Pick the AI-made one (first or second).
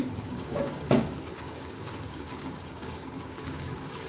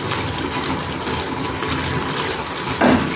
first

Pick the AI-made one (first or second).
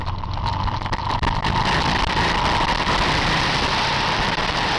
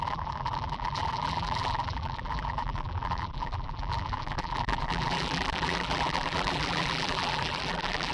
second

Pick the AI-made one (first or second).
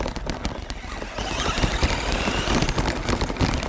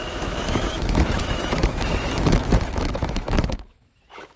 second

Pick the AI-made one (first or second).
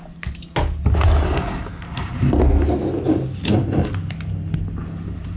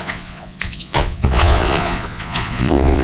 second